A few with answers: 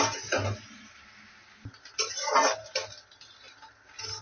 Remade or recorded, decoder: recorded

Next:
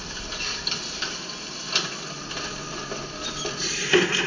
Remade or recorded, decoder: recorded